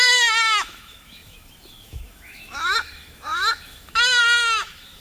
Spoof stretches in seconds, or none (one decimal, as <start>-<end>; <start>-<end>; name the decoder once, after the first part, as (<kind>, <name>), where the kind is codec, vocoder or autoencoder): 0.0-5.0 (autoencoder, DAC-VAE)